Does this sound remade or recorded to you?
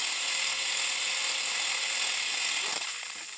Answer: recorded